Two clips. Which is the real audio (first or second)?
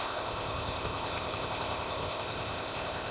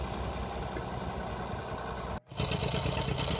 second